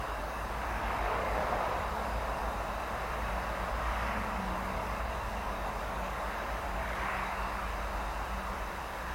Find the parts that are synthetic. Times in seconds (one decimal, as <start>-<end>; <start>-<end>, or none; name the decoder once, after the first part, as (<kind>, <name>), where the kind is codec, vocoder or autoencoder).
0.0-1.4 (codec, DAC); 1.9-2.4; 3.7-7.7; 8.7-9.1